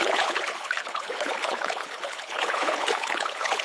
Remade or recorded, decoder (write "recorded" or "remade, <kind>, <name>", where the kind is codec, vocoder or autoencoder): remade, codec, HILCodec